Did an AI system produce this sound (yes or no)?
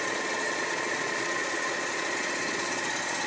yes